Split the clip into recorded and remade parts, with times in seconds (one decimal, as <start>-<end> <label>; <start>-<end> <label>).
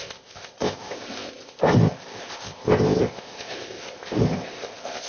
0.0-5.1 remade